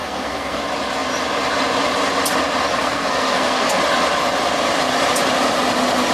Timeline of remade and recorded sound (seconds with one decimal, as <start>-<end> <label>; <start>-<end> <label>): 0.0-0.6 remade; 0.6-2.7 recorded; 2.7-3.8 remade; 3.8-6.1 recorded